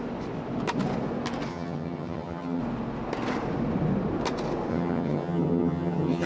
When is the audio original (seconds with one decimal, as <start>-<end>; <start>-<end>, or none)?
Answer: 0.0-1.5; 2.6-4.7